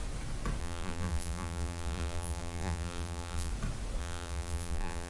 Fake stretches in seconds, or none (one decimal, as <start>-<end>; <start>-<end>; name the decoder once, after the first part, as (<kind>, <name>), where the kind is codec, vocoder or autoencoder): 0.6-3.5 (vocoder, BigVGAN v2); 4.0-5.1